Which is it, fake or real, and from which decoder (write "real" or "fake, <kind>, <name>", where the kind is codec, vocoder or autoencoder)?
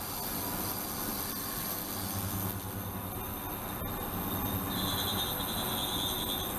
real